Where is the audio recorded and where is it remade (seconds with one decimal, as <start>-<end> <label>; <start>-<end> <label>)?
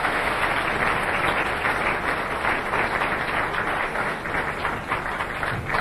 0.0-0.4 remade; 0.4-3.8 recorded; 3.8-4.2 remade; 4.2-5.8 recorded